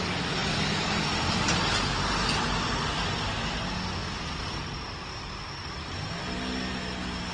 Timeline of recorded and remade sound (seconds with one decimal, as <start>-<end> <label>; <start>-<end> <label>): 0.0-7.3 recorded